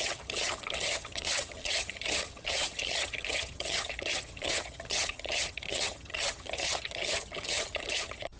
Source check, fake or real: fake